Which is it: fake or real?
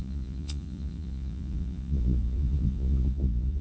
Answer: fake